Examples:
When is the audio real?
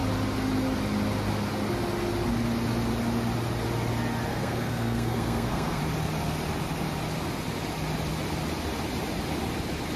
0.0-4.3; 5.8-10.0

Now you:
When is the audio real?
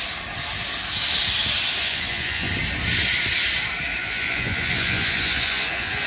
0.0-1.8; 2.5-4.0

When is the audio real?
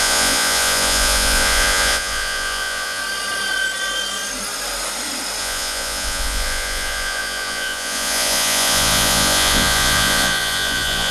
3.0-5.4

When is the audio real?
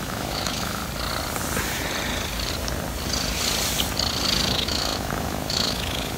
0.8-4.5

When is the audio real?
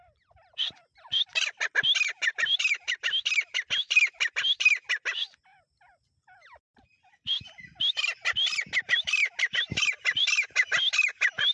0.0-2.3; 4.4-9.2; 10.2-11.5